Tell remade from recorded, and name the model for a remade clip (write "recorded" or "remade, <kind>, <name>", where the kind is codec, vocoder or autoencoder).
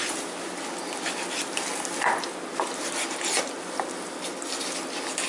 recorded